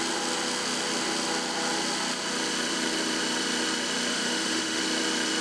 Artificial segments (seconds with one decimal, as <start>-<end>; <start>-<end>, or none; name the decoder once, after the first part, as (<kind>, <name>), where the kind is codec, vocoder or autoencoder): 4.1-4.8 (autoencoder, DAC-VAE)